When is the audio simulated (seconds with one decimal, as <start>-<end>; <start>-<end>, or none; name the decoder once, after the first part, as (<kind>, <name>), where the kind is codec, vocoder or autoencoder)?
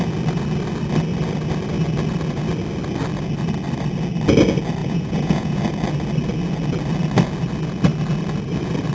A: 4.8-5.6 (vocoder, Vocos)